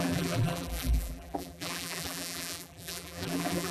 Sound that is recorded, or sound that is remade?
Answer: remade